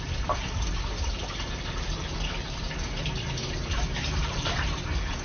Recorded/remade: remade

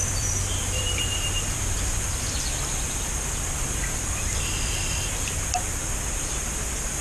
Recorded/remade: remade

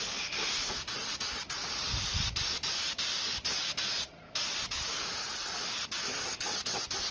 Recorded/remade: recorded